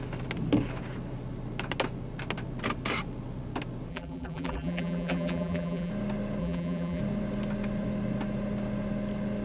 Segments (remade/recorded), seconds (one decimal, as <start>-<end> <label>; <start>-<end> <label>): 0.0-3.9 recorded; 3.9-5.9 remade; 5.9-6.4 recorded; 6.4-7.0 remade; 7.0-9.4 recorded